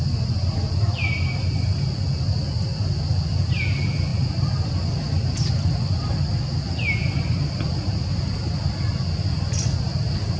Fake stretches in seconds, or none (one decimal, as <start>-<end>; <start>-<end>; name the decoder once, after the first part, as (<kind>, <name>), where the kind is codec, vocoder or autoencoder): none